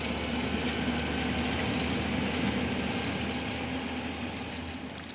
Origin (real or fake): real